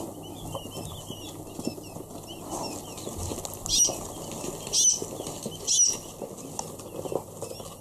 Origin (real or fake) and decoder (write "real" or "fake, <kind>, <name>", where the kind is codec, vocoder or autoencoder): real